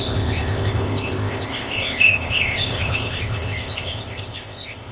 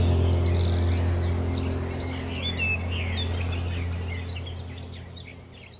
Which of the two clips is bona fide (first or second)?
second